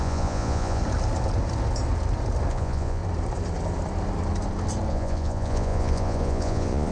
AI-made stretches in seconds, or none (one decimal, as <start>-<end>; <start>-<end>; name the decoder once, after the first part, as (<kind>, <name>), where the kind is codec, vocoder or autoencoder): 0.0-0.8 (vocoder, Vocos); 2.5-3.0; 4.9-6.9